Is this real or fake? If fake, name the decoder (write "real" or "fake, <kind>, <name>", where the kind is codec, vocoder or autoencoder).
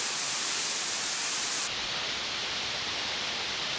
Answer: fake, vocoder, BigVGAN v2